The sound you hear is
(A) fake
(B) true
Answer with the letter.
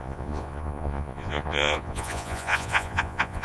A